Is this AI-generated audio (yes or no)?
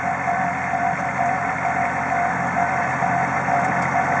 no